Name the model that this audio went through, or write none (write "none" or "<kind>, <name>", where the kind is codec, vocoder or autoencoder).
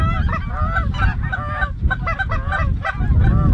none